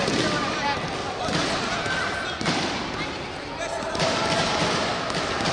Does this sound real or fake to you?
real